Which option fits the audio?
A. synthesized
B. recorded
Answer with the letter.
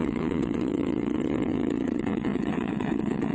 A